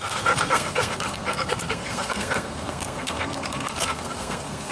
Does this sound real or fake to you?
fake